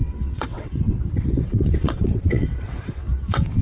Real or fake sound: fake